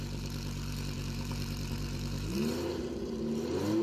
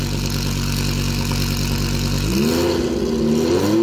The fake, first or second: first